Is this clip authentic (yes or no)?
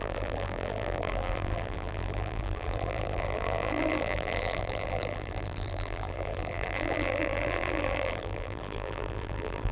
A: no